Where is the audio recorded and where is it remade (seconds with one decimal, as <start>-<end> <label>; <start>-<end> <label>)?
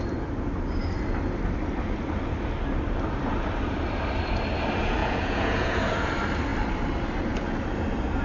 0.0-5.0 recorded; 5.0-6.1 remade; 6.1-8.2 recorded